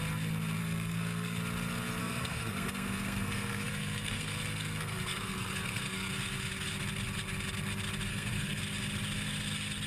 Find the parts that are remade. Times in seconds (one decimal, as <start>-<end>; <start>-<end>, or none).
0.6-1.4; 2.0-6.1; 8.1-8.6